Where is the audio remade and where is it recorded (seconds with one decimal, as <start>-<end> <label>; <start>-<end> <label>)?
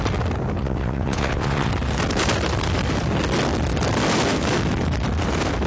0.0-0.6 recorded; 0.6-1.7 remade; 1.7-5.7 recorded